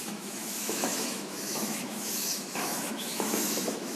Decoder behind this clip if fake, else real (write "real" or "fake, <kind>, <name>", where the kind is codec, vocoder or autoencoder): fake, autoencoder, DAC-VAE